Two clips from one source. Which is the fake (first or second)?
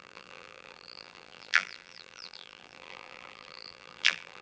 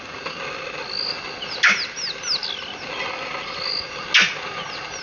first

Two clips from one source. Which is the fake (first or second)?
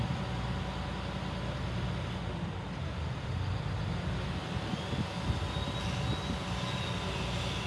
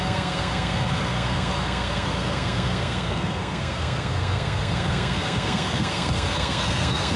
second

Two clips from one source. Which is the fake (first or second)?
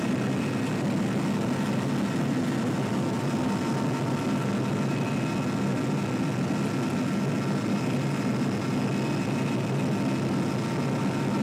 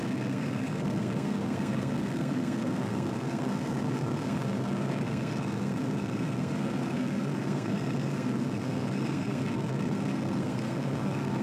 second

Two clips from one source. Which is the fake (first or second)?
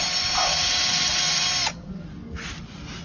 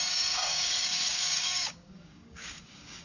second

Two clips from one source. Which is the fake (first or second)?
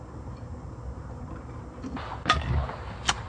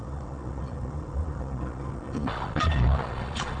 second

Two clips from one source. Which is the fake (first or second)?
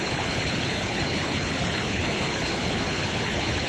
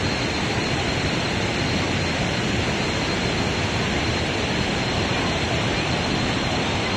first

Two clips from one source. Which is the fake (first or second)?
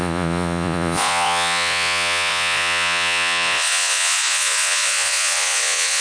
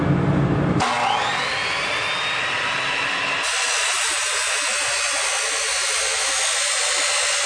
first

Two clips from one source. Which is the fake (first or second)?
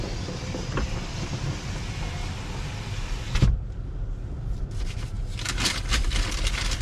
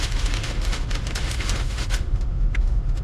second